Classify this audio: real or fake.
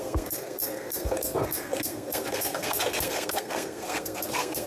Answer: fake